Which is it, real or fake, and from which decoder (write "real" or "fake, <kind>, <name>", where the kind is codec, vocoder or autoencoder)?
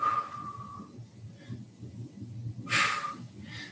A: real